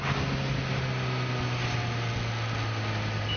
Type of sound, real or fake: real